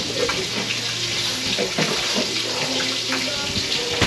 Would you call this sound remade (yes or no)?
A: no